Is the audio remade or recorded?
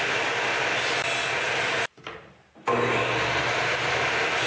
recorded